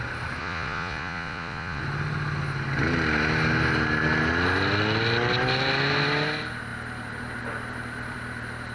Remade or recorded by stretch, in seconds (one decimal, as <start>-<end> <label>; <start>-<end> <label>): 0.0-0.4 recorded; 0.4-1.8 remade; 1.8-8.7 recorded